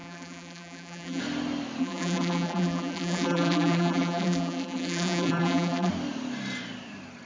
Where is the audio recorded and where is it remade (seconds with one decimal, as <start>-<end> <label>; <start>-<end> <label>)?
0.0-1.2 remade; 1.2-1.8 recorded; 1.8-5.9 remade; 5.9-7.3 recorded